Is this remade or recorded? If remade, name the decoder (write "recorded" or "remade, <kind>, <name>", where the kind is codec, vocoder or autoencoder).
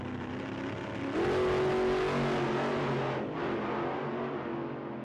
recorded